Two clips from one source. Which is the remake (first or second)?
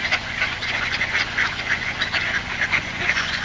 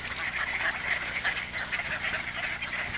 first